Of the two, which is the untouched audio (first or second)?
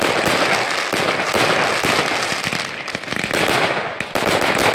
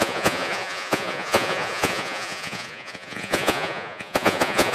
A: first